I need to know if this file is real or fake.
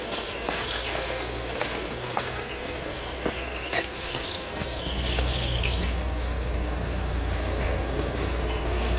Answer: fake